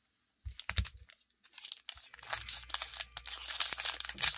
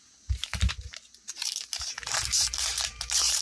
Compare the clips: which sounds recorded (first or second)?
first